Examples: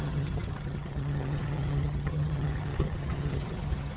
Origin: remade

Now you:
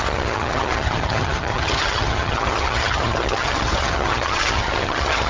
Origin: remade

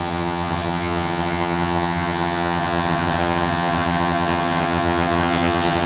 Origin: remade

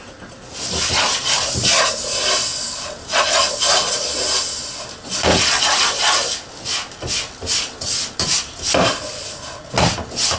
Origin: recorded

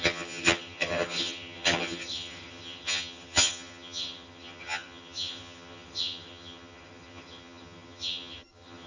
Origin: remade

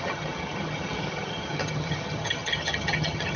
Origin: remade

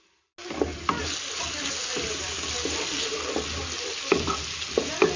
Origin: recorded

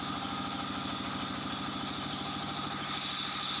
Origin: recorded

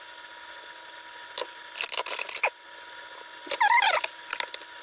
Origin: recorded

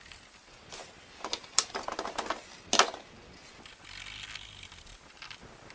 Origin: recorded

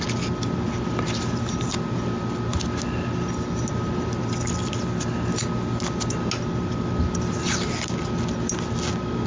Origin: recorded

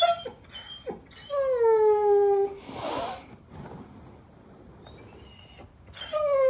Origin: recorded